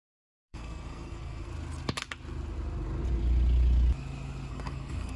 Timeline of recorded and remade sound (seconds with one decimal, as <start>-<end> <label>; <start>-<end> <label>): 0.0-1.5 remade; 1.5-4.5 recorded; 4.5-5.2 remade